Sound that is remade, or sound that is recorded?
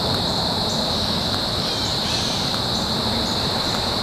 remade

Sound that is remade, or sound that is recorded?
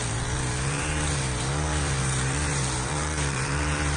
remade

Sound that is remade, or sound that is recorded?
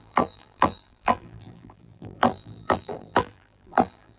remade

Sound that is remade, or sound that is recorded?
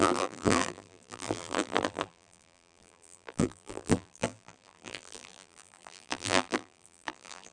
remade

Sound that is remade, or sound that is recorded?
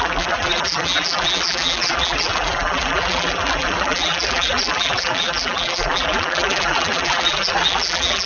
remade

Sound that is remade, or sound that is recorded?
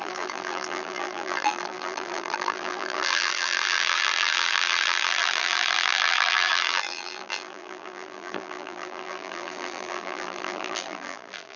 remade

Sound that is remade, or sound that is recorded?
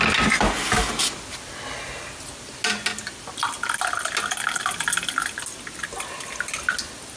recorded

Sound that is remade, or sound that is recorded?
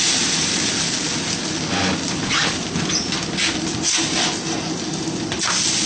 recorded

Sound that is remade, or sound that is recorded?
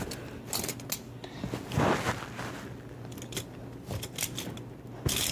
recorded